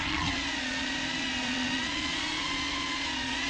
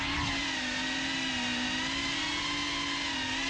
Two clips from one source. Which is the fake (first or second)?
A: first